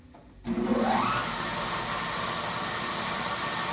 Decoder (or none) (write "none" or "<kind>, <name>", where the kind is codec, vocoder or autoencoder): none